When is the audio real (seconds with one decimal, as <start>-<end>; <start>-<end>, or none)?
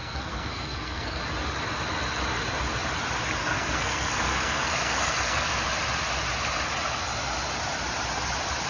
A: 1.2-3.4; 5.5-8.7